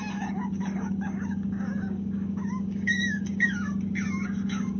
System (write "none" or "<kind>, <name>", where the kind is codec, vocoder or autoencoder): codec, DAC